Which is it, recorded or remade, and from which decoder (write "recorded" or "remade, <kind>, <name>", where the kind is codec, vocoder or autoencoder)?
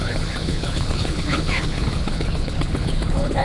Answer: remade, codec, HILCodec